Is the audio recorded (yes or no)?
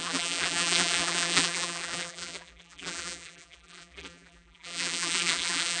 no